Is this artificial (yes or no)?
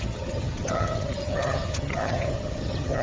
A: yes